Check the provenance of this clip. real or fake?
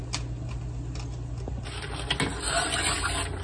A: real